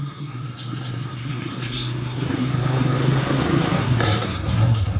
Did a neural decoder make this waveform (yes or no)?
yes